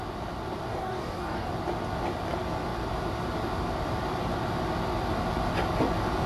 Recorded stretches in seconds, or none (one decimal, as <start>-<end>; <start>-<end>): 0.0-0.7; 1.5-6.3